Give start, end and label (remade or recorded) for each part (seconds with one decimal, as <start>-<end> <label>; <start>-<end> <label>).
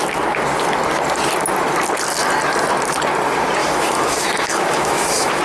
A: 0.0-3.6 recorded; 3.6-5.4 remade